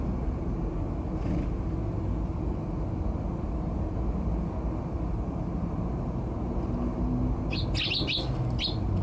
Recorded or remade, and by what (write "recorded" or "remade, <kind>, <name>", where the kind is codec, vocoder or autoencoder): recorded